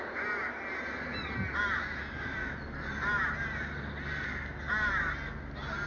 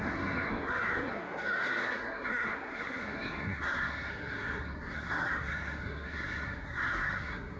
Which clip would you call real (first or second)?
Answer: first